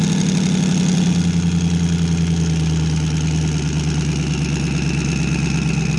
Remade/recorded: recorded